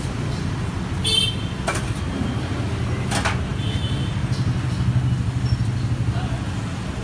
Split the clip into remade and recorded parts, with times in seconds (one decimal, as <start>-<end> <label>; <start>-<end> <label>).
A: 0.0-7.0 recorded